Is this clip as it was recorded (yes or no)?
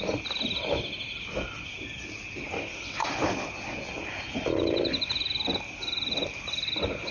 yes